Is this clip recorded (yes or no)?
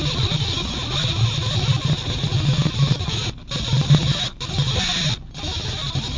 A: yes